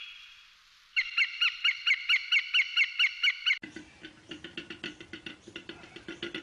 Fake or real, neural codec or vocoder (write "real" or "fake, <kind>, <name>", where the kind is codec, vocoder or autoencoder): real